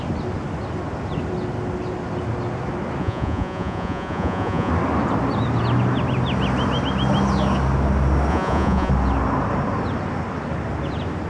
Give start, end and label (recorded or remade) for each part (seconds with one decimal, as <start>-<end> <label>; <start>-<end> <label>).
0.0-3.0 recorded; 3.0-4.7 remade; 4.7-8.3 recorded; 8.3-8.9 remade; 8.9-11.3 recorded